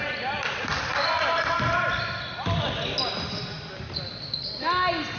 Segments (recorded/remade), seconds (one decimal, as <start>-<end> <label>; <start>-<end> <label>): 0.0-5.2 recorded